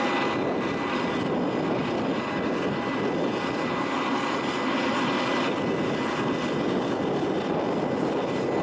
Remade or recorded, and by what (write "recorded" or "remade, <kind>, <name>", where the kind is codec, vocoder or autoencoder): recorded